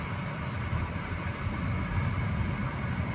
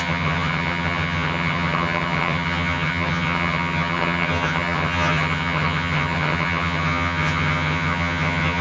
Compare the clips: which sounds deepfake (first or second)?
second